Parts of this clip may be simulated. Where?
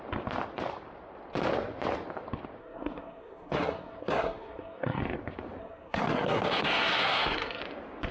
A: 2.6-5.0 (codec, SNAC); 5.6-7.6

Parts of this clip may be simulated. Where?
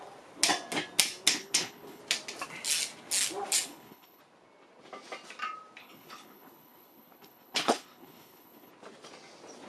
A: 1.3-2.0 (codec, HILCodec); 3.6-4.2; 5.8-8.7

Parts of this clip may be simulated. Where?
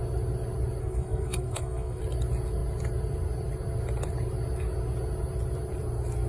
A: 0.8-2.0 (codec, SNAC)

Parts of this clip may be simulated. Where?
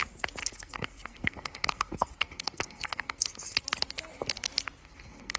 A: 0.4-3.6 (codec, SNAC); 4.8-5.4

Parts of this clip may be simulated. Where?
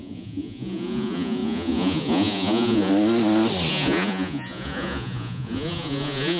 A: 0.0-2.9 (vocoder, Vocos); 3.7-6.4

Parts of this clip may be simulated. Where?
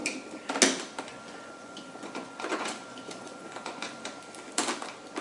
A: 1.1-4.2 (vocoder, Vocos)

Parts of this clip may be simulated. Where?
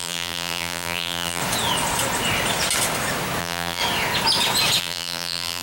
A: 0.0-1.4 (vocoder, BigVGAN v2); 3.4-3.8; 4.8-5.6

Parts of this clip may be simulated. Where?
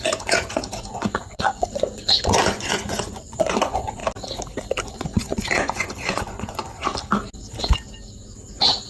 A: 0.0-4.0 (vocoder, Vocos); 4.9-6.9